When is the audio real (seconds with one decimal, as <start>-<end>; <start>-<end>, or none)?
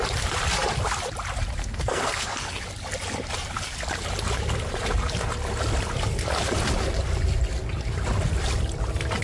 0.0-1.6; 2.6-9.2